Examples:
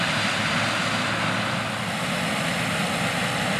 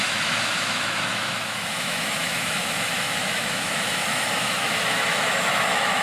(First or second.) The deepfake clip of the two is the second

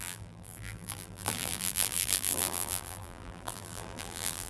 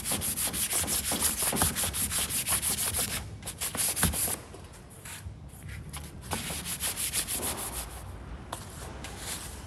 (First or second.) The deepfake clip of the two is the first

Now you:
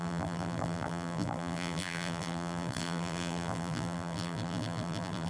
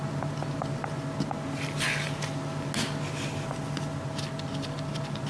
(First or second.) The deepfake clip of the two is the first